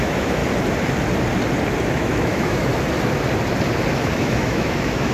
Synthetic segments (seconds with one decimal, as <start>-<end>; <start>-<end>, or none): 0.0-0.4; 1.9-2.7; 3.9-5.1